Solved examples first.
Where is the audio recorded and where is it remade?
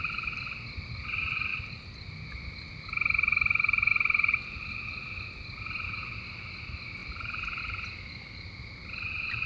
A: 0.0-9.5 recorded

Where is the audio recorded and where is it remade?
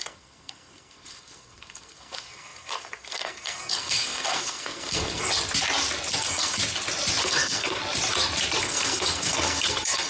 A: 0.0-5.3 remade; 5.3-6.1 recorded; 6.1-6.6 remade; 6.6-7.2 recorded; 7.2-7.8 remade; 7.8-8.6 recorded; 8.6-10.1 remade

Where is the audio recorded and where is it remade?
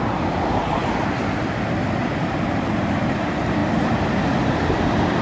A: 0.0-5.2 recorded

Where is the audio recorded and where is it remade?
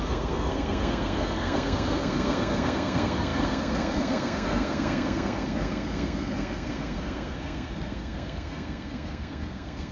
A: 0.0-9.9 remade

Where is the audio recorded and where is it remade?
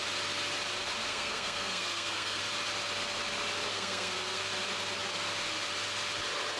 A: 0.0-1.1 recorded; 1.1-2.4 remade; 2.4-3.7 recorded; 3.7-4.4 remade; 4.4-6.6 recorded